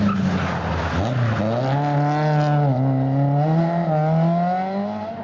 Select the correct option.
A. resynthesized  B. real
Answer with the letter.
B